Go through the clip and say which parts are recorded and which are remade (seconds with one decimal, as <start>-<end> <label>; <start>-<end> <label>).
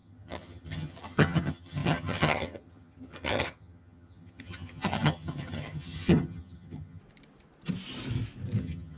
0.0-7.0 remade; 7.0-8.6 recorded; 8.6-9.0 remade